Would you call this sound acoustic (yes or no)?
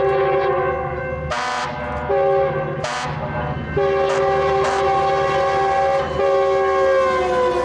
yes